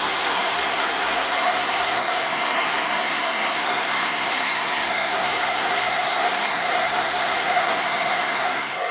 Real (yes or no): no